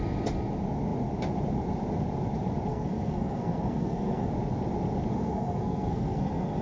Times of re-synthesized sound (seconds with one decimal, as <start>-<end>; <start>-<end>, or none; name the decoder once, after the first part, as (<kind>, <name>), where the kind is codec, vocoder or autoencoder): 2.7-4.3 (codec, SNAC); 5.1-6.6